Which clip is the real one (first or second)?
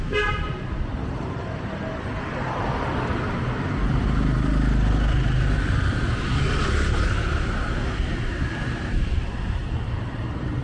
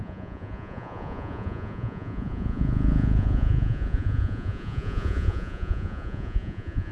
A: first